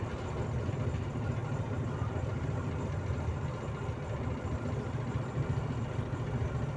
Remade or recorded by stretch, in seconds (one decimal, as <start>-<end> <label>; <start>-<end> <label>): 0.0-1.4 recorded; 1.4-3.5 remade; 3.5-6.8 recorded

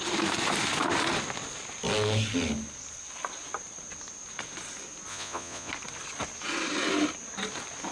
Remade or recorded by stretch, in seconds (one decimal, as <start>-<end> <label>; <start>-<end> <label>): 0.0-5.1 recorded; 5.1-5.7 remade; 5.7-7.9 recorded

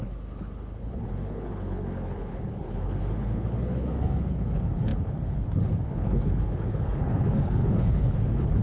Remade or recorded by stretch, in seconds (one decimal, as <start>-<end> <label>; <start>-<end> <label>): 0.0-8.6 remade

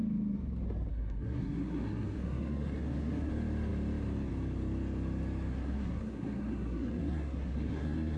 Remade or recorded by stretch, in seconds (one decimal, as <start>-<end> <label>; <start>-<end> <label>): 0.0-0.9 recorded; 0.9-3.3 remade; 3.3-5.5 recorded; 5.5-8.2 remade

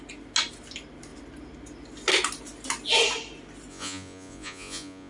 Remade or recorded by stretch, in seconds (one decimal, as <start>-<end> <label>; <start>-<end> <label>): 0.0-3.7 recorded; 3.7-5.1 remade

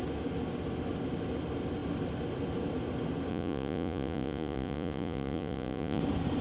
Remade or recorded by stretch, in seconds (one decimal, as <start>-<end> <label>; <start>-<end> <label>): 0.0-3.3 recorded; 3.3-6.0 remade; 6.0-6.4 recorded